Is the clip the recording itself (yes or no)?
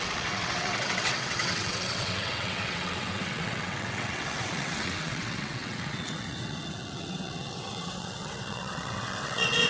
no